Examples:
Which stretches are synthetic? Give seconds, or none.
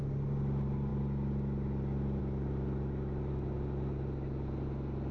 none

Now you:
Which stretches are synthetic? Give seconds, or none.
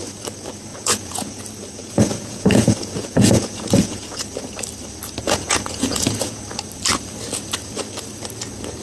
0.7-1.4 (vocoder, Vocos); 1.8-4.2; 5.2-6.4